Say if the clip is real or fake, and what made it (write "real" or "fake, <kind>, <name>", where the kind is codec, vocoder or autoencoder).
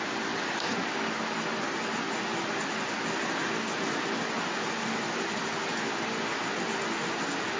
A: real